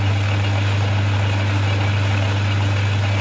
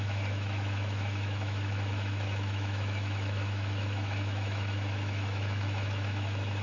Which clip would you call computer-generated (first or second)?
second